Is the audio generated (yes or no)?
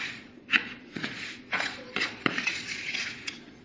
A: yes